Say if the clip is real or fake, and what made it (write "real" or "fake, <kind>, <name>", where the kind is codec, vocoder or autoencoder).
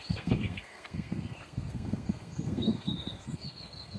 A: fake, codec, SNAC